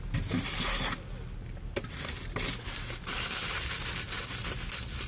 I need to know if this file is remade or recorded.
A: remade